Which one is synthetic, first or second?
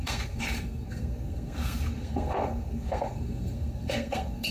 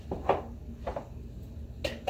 first